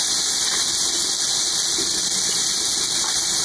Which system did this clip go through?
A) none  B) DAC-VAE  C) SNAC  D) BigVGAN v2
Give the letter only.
A